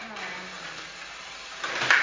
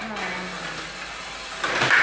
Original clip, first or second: second